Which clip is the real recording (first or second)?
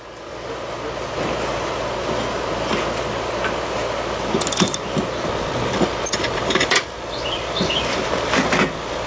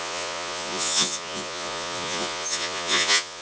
first